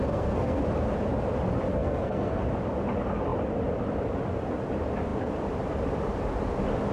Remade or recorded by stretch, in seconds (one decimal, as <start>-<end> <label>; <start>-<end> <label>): 0.0-0.6 remade; 0.6-1.7 recorded; 1.7-2.4 remade; 2.4-6.9 recorded